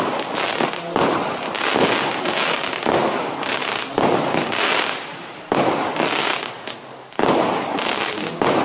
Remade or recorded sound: recorded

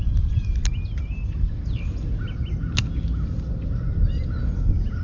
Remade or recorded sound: recorded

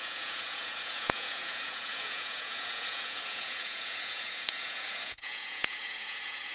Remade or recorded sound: remade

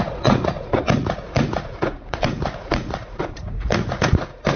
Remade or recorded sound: remade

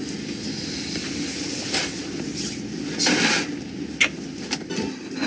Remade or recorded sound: recorded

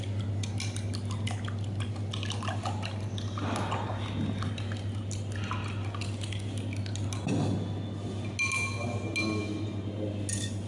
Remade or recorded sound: recorded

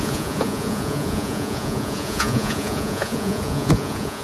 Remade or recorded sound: remade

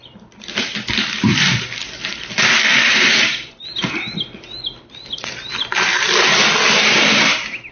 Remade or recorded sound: recorded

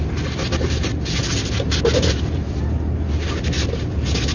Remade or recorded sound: recorded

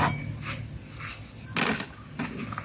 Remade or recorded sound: recorded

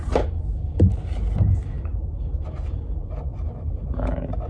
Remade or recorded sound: recorded